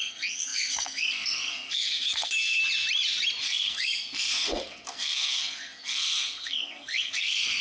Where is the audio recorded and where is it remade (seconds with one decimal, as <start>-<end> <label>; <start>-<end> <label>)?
0.0-2.6 remade; 2.6-3.4 recorded; 3.4-7.6 remade